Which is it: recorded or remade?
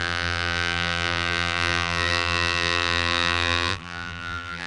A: remade